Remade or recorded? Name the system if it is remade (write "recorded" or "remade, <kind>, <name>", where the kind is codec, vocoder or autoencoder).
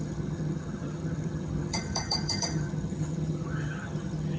remade, vocoder, HiFi-GAN